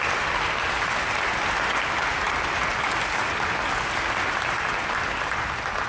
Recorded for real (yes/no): yes